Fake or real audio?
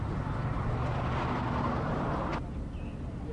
real